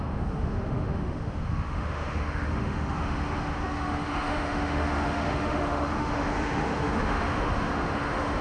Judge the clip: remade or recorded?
remade